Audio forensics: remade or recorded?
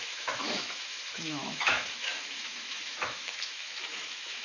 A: remade